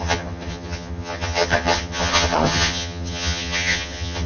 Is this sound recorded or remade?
remade